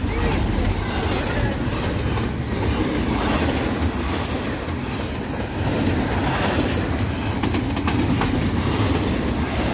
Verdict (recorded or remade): recorded